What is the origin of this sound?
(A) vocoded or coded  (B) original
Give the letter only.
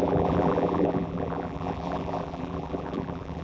A